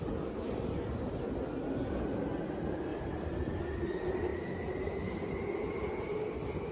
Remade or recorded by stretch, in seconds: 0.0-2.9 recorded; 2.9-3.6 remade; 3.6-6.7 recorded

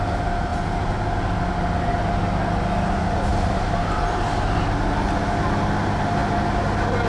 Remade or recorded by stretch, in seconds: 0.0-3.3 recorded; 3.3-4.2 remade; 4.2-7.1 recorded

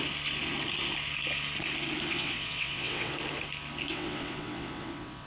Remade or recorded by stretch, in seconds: 0.0-2.1 recorded; 2.1-3.1 remade; 3.1-3.9 recorded; 3.9-5.3 remade

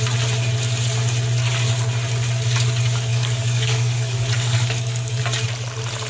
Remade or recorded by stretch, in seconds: 0.0-3.1 recorded; 3.1-5.2 remade; 5.2-6.1 recorded

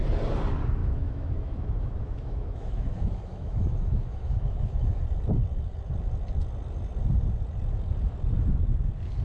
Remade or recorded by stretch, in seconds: 0.0-0.8 recorded; 0.8-5.0 remade; 5.0-9.2 recorded

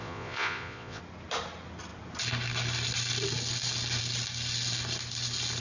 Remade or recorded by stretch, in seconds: 0.0-1.0 remade; 1.0-5.6 recorded